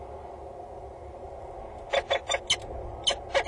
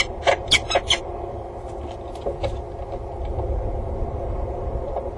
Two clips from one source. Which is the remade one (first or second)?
second